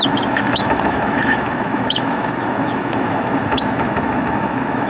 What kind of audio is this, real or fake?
fake